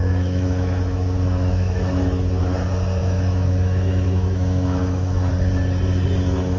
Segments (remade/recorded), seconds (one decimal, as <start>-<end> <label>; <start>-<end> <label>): 0.0-2.4 remade; 2.4-3.0 recorded; 3.0-5.3 remade; 5.3-6.6 recorded